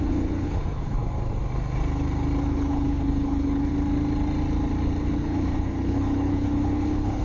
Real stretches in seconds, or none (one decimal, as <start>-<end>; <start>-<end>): 1.0-2.4; 3.7-5.0